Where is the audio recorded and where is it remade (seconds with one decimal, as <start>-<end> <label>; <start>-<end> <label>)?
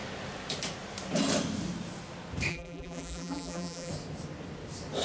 0.0-2.5 recorded; 2.5-3.9 remade; 3.9-5.0 recorded